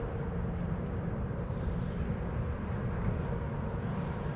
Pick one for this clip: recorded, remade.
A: recorded